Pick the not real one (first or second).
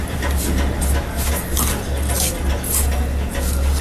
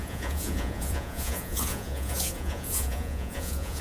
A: second